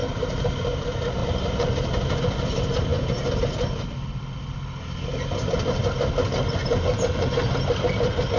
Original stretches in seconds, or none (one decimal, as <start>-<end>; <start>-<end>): 0.6-1.2; 2.2-6.6; 7.4-8.4